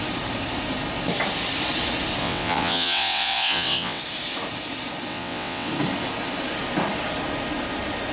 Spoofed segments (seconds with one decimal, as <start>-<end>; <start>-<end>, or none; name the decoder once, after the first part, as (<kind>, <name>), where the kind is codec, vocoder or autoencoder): 2.2-4.0 (vocoder, WaveNeXt); 5.1-5.7